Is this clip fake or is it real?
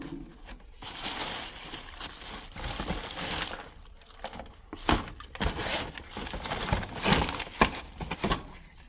real